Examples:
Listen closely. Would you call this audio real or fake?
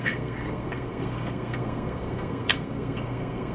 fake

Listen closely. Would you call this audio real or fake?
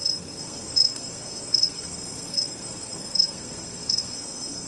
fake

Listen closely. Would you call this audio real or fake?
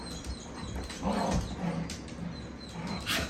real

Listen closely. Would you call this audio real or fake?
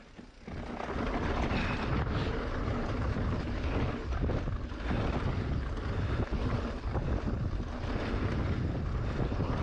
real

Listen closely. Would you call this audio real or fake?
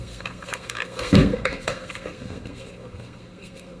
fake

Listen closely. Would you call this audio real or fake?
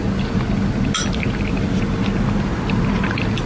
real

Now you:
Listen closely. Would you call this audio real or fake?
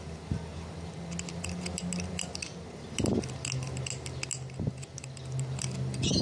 real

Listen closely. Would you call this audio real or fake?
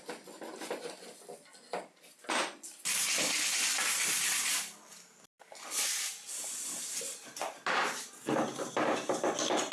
real